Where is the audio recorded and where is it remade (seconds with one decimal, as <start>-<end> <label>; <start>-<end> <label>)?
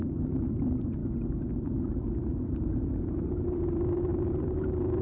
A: 0.0-1.0 remade; 1.0-1.5 recorded; 1.5-2.7 remade; 2.7-3.3 recorded; 3.3-5.0 remade